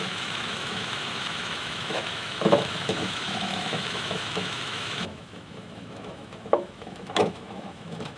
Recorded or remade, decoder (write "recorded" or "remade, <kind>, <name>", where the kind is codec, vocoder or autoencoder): remade, autoencoder, DAC-VAE